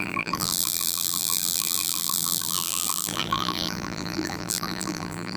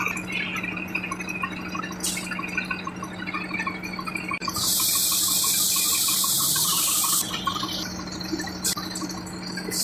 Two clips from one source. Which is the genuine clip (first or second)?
second